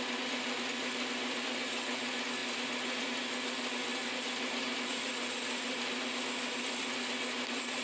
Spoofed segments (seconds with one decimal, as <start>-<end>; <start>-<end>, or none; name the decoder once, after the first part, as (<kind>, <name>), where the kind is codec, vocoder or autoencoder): none